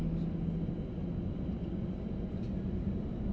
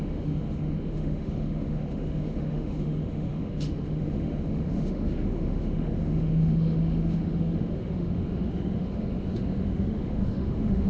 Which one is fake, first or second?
second